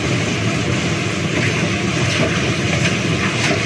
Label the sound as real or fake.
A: real